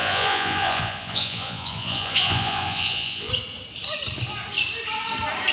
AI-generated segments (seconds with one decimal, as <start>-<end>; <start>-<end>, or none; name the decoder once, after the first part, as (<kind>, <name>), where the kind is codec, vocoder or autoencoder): 0.0-3.3 (vocoder, Vocos)